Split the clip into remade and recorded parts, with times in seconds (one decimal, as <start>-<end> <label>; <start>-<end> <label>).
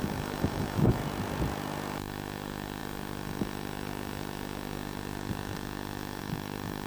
0.0-1.0 remade; 1.0-1.9 recorded; 1.9-6.9 remade